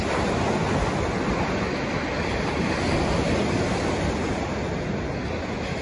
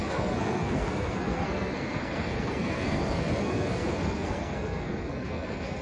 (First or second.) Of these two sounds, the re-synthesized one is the second